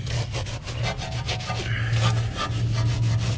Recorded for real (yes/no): yes